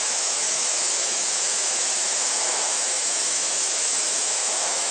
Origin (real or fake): fake